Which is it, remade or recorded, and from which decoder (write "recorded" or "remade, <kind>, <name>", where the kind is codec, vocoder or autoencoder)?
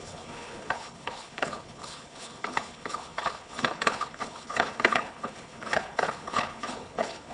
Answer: remade, codec, HILCodec